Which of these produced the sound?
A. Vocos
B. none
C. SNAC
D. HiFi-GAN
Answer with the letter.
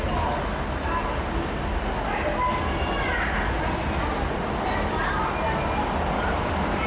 B